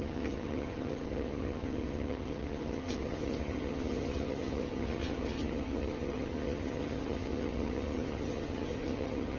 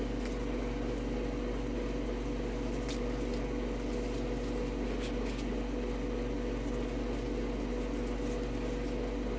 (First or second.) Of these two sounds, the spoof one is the first